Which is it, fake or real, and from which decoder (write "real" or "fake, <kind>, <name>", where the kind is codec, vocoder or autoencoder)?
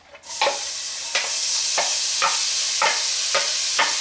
real